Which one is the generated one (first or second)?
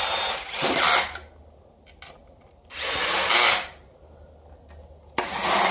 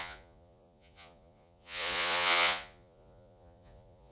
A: second